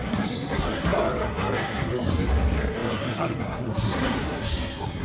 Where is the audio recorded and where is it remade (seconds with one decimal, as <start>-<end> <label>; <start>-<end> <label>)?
0.0-5.0 remade